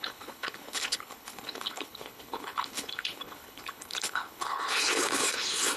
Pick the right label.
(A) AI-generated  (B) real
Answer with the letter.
A